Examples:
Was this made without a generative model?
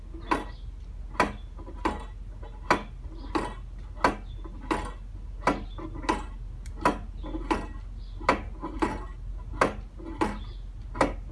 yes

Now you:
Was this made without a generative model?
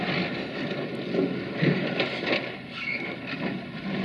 yes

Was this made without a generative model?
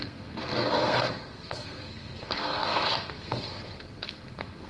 no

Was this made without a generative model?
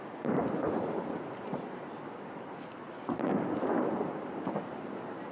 yes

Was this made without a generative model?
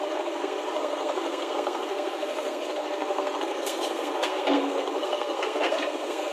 no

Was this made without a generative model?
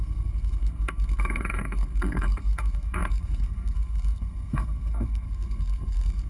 no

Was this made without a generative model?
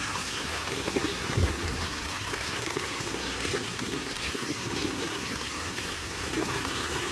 no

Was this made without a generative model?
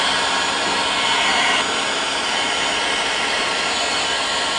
yes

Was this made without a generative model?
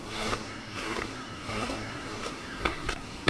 no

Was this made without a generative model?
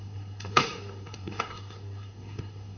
no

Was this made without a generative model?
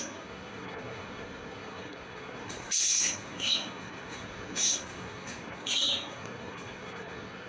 no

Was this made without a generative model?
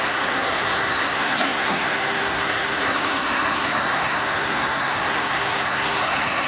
no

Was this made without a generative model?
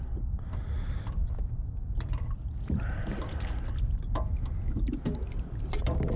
yes